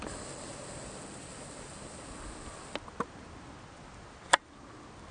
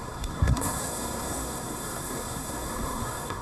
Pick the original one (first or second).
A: first